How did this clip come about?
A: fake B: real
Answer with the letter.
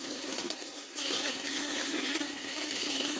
A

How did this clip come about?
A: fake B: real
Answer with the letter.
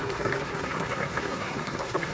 A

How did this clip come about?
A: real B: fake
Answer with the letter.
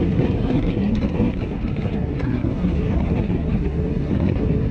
B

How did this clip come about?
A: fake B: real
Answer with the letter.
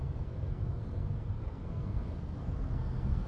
A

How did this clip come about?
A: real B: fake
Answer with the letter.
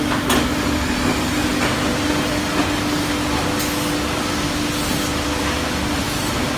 A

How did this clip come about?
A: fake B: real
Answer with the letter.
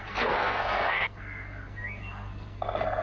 A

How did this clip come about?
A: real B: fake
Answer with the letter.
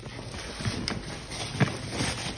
A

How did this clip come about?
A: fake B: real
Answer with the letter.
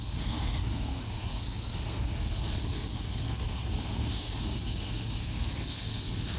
A